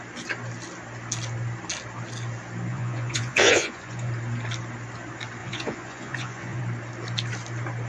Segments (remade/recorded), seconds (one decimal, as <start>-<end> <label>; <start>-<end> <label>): 0.0-2.7 recorded; 2.7-4.1 remade; 4.1-5.4 recorded; 5.4-6.6 remade; 6.6-7.9 recorded